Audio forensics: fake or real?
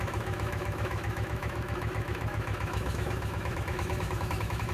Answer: fake